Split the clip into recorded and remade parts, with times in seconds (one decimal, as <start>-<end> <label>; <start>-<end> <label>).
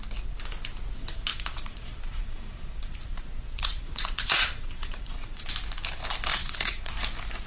0.0-1.3 recorded; 1.3-5.5 remade; 5.5-6.3 recorded; 6.3-6.9 remade; 6.9-7.5 recorded